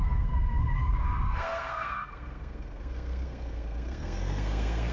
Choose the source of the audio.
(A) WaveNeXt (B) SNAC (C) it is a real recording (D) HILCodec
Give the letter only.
B